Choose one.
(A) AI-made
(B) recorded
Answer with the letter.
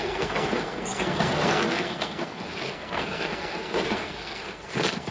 A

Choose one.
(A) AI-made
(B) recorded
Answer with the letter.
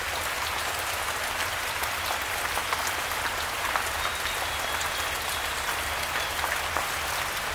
B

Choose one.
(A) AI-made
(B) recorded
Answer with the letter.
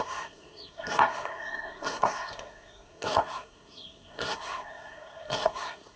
A